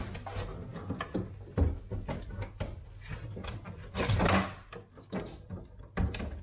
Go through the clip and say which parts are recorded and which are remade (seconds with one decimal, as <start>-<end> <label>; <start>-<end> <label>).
0.0-6.4 recorded